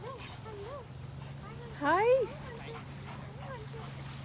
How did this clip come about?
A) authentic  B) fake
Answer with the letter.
A